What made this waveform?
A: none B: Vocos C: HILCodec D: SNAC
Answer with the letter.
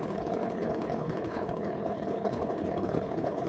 C